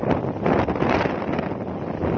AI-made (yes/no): no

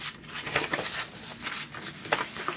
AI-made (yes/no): no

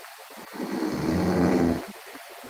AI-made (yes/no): no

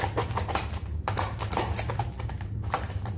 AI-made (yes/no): no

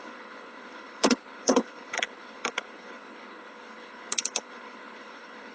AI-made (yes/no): yes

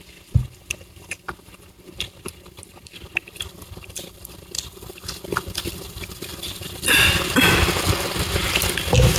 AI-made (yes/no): no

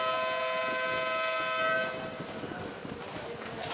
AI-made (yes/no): no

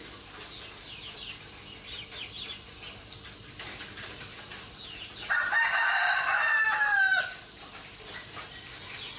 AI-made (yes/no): no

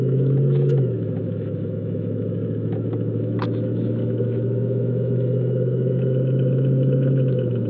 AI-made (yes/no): yes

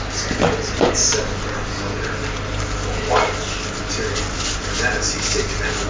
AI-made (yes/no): no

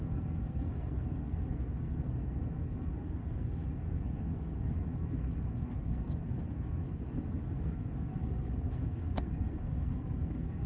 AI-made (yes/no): yes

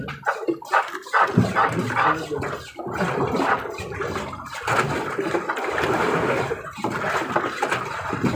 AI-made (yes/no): no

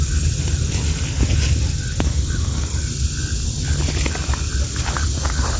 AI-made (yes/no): no